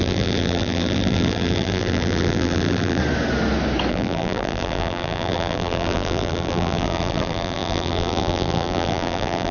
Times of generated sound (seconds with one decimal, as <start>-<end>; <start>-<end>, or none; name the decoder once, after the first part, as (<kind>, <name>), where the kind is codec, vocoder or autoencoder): 0.0-3.0 (vocoder, BigVGAN v2); 3.9-9.5